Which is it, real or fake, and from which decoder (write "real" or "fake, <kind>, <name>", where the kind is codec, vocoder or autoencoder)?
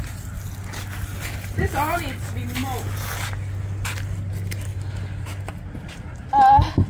real